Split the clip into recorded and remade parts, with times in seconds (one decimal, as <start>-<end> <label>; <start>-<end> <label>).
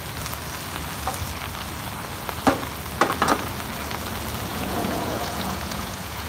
0.0-4.5 recorded; 4.5-6.3 remade